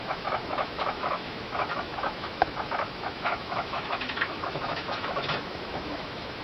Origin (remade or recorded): remade